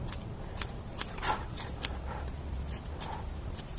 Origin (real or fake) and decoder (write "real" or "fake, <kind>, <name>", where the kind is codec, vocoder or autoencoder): real